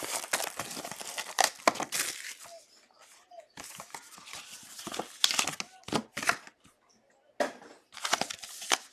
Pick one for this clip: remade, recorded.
recorded